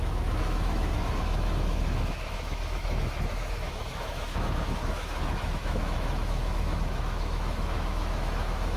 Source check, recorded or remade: remade